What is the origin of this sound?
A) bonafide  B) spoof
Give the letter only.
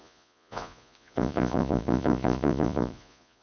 B